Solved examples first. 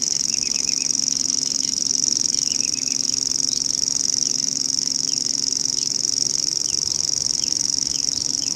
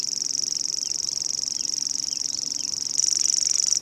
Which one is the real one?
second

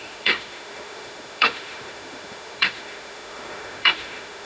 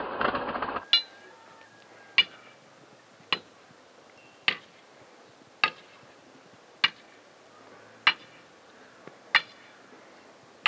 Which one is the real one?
second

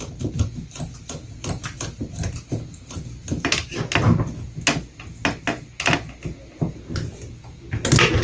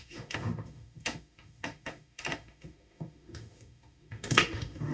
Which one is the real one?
first